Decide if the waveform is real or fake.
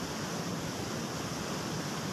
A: real